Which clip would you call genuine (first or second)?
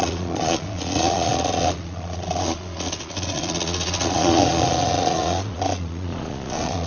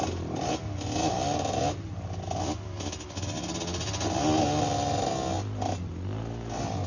second